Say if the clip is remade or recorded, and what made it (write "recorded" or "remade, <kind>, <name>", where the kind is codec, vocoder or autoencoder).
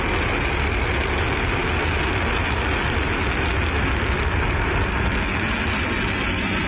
recorded